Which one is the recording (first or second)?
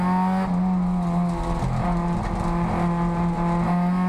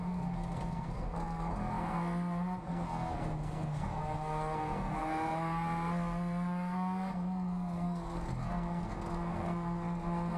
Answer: first